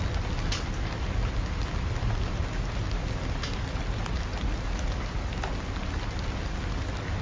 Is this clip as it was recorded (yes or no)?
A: yes